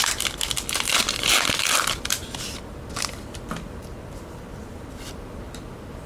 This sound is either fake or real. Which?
fake